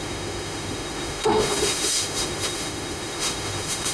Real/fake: fake